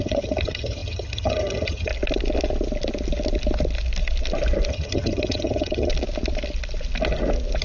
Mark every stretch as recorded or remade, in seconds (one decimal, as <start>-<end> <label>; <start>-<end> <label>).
0.0-1.9 remade; 1.9-4.7 recorded; 4.7-5.9 remade; 5.9-7.6 recorded